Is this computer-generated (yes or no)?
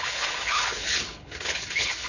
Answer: yes